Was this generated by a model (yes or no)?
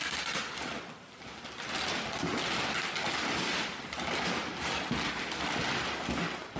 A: no